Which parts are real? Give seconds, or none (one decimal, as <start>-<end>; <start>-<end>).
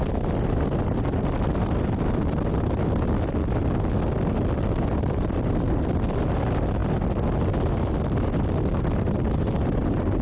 0.0-10.2